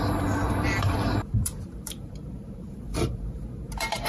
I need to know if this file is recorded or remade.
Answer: remade